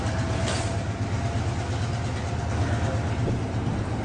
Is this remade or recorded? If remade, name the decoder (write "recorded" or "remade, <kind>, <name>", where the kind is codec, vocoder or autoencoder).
recorded